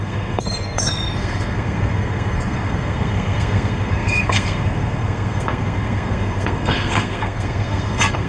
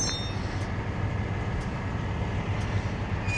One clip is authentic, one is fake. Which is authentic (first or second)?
second